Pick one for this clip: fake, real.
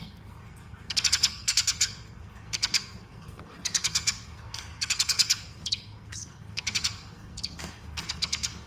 fake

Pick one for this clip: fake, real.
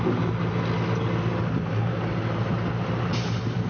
real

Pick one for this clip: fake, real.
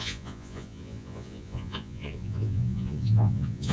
fake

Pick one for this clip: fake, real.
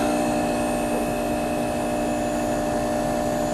real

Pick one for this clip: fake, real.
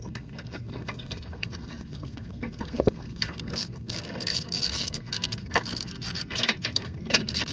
fake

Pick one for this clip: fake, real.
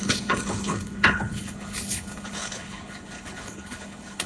fake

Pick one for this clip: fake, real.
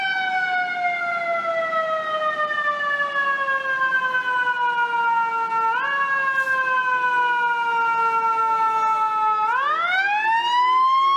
real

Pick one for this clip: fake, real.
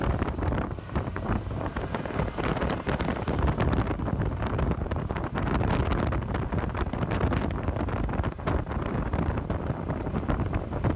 fake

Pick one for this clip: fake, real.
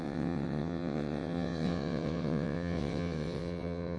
fake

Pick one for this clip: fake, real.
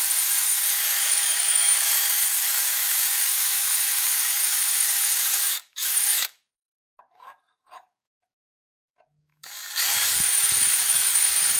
fake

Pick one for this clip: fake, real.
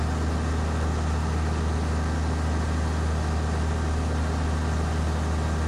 real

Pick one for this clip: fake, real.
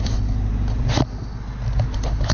real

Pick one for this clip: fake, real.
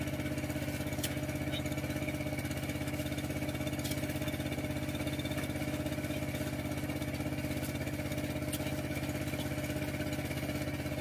real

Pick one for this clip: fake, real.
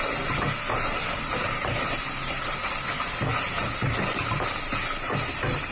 real